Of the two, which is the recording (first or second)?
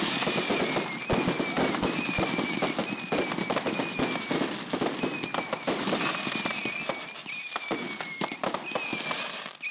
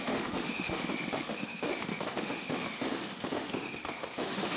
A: first